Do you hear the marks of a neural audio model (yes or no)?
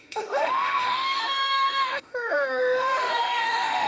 yes